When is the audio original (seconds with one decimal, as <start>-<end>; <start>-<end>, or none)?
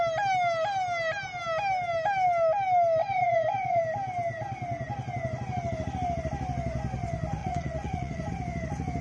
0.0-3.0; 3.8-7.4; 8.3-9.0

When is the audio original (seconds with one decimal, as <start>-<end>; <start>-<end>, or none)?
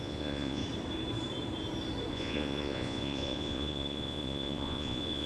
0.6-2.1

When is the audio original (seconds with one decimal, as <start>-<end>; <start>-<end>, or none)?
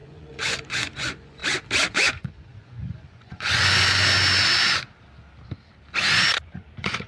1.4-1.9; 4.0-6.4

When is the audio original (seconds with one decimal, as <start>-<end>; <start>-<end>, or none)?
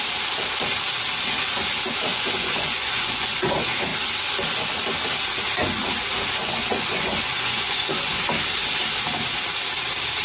0.0-2.1; 3.5-6.4; 8.1-10.2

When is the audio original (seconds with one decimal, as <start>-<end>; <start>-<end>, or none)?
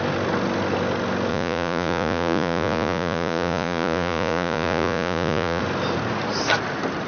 0.0-1.3; 5.6-7.1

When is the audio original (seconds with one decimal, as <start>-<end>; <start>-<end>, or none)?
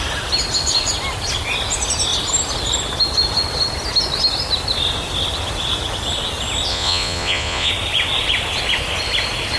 0.0-6.7; 7.7-9.6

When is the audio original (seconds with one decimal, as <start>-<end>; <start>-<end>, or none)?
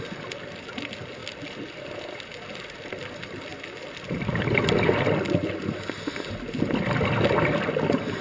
0.0-8.2